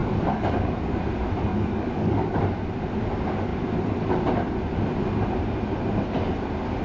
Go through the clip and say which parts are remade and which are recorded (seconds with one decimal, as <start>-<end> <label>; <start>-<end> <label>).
0.0-1.0 remade; 1.0-1.5 recorded; 1.5-2.4 remade; 2.4-6.8 recorded